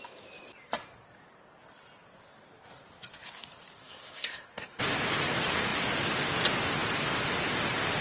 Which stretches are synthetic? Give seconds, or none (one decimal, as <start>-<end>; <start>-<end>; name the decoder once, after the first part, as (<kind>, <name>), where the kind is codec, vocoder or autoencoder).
3.8-4.8 (codec, SNAC)